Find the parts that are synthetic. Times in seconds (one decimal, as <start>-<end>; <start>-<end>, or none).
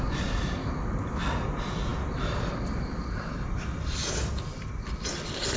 none